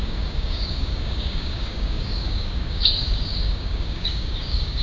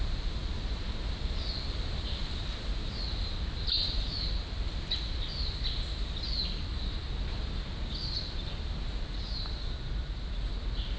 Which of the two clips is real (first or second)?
second